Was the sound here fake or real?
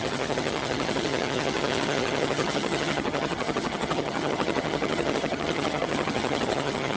fake